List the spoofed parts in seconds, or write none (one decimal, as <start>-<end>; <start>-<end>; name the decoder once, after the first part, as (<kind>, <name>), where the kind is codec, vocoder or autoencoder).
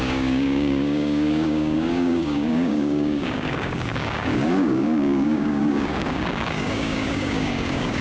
0.0-8.0 (codec, DAC)